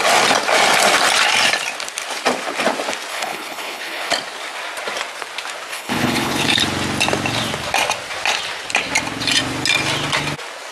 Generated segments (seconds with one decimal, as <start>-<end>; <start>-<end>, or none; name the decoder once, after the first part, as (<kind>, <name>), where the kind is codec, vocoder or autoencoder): 3.1-4.1 (codec, HILCodec); 5.7-6.6